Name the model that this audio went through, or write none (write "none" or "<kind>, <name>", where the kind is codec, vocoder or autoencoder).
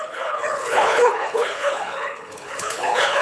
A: codec, HILCodec